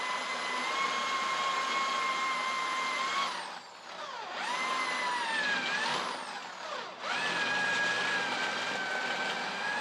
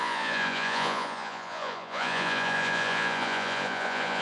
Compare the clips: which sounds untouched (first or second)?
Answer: first